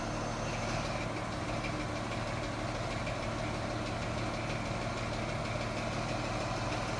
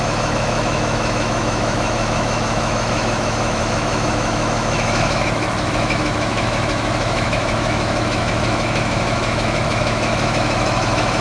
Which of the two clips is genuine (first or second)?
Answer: first